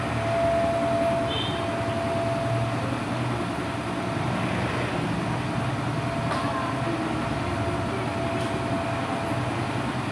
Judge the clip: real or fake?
real